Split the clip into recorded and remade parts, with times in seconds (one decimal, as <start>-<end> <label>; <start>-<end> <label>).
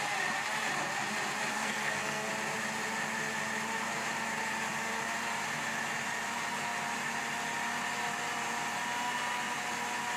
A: 0.0-1.5 recorded; 1.5-2.3 remade; 2.3-10.2 recorded